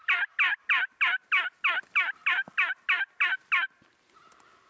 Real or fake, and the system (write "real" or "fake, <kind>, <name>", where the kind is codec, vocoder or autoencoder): real